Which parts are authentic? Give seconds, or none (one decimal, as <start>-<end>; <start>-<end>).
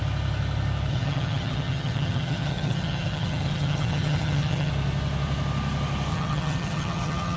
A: 0.0-0.9; 4.7-6.1